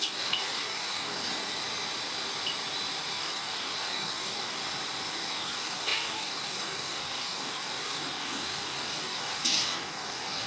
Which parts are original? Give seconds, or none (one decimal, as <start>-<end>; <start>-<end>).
1.3-3.1; 4.6-5.1